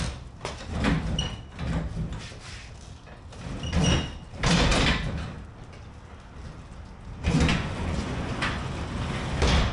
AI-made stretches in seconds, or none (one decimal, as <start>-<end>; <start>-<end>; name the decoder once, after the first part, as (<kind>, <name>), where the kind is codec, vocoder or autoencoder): 7.5-8.7 (vocoder, Vocos)